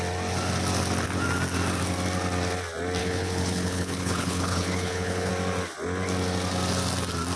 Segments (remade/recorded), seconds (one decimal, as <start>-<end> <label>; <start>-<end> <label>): 0.0-3.0 recorded; 3.0-5.3 remade; 5.3-7.4 recorded